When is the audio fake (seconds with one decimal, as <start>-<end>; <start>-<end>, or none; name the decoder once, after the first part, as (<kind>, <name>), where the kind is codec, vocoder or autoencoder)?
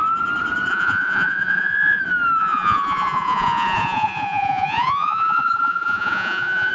0.7-2.0 (vocoder, Vocos); 2.4-6.7